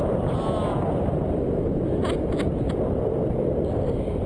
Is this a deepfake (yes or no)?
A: no